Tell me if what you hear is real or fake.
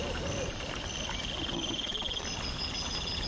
real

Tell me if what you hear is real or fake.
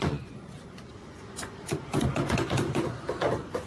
fake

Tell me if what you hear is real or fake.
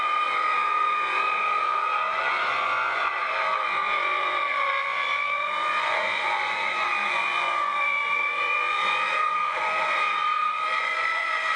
fake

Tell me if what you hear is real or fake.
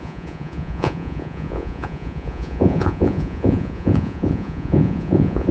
fake